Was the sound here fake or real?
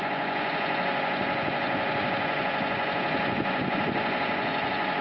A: fake